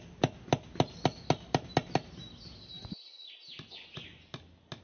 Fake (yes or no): no